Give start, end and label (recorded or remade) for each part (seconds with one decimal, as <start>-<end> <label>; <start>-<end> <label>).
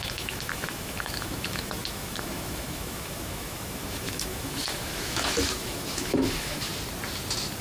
0.0-6.7 remade; 6.7-7.6 recorded